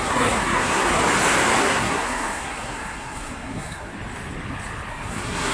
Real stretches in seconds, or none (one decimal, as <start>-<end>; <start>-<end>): 1.0-1.6; 3.9-4.9